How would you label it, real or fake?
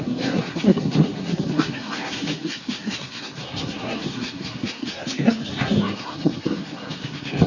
fake